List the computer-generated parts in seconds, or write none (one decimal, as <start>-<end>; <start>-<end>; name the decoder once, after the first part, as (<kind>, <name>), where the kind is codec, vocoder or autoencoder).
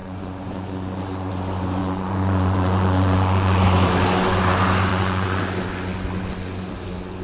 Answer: 0.0-1.3 (vocoder, Vocos); 1.8-3.6; 4.9-5.4